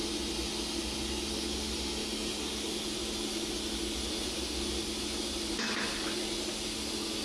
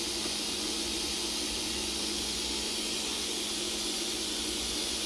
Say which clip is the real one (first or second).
first